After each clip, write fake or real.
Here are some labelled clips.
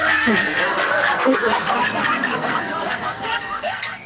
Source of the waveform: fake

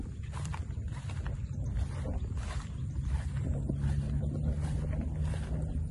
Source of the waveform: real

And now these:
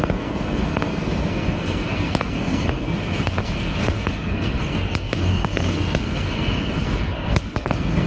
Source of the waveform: fake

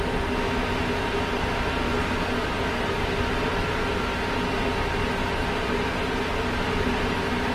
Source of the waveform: real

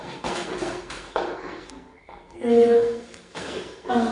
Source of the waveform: fake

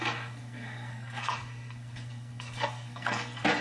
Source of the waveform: fake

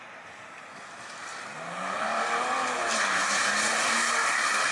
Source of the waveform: real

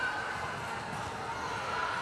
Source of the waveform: real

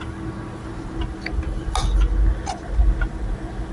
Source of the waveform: real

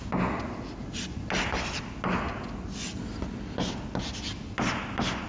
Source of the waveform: real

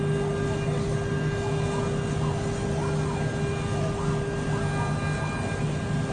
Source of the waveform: real